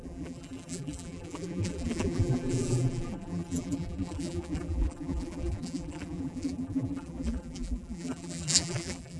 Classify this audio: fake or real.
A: fake